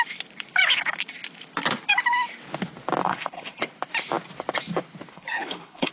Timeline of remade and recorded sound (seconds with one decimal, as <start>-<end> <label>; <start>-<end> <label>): 0.0-3.0 recorded; 3.0-3.6 remade; 3.6-5.1 recorded; 5.1-5.9 remade